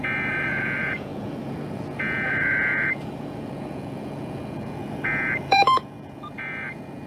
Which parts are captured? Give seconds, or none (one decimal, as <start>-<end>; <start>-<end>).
none